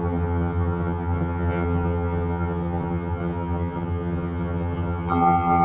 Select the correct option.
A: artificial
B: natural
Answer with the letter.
A